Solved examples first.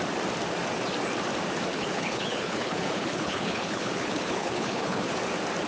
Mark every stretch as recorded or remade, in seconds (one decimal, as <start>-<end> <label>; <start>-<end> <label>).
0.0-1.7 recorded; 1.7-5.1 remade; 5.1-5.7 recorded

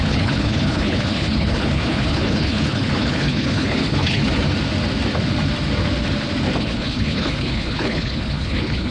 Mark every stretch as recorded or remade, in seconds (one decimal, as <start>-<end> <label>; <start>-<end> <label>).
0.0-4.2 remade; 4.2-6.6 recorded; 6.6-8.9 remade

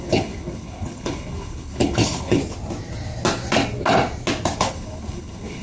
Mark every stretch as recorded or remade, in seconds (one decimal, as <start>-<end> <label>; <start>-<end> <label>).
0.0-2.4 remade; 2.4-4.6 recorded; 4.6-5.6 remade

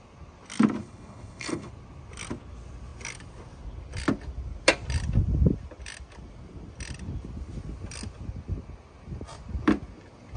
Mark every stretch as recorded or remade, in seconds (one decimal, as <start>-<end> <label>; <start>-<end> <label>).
0.0-0.8 recorded; 0.8-1.7 remade; 1.7-10.4 recorded